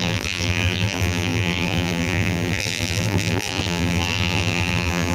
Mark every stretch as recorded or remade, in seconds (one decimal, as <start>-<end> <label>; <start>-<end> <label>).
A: 0.0-5.1 remade